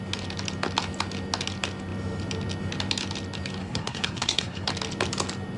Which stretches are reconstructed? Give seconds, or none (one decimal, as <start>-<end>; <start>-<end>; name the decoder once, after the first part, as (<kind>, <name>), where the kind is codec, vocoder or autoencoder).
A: 3.6-4.7 (codec, SNAC)